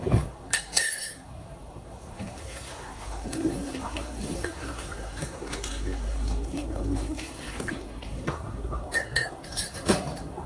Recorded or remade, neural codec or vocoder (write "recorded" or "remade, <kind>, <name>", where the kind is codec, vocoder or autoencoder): remade, codec, SNAC